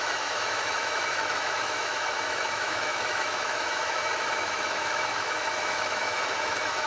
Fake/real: fake